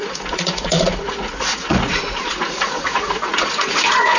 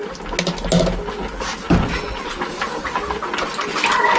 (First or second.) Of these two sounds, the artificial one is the first